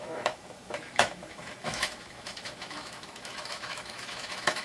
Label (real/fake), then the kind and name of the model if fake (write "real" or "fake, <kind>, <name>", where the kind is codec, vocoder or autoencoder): fake, autoencoder, DAC-VAE